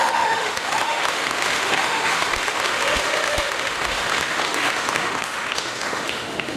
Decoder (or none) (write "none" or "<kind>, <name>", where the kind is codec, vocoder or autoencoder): autoencoder, DAC-VAE